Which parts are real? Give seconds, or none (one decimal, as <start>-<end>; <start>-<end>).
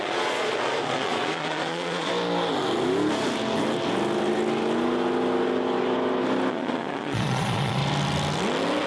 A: 2.1-6.5; 7.8-8.9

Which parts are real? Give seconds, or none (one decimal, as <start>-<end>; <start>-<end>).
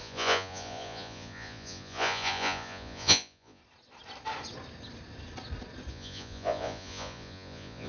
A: 3.6-5.9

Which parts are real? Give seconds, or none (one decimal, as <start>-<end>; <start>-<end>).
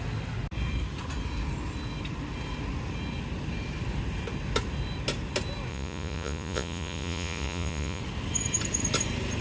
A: 0.0-5.7; 8.0-9.4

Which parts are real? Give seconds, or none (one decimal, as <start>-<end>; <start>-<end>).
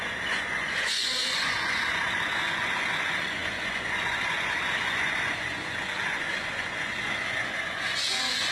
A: none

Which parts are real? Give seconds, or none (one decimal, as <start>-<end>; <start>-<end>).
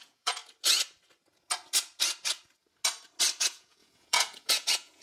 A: 0.4-3.4